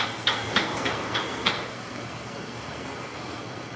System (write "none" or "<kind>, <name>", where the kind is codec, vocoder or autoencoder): codec, SNAC